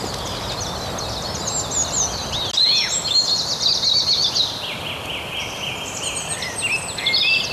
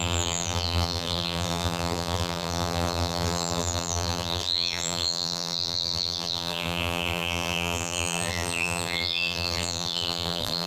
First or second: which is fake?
second